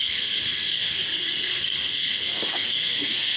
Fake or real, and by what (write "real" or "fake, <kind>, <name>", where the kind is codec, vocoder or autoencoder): fake, codec, SNAC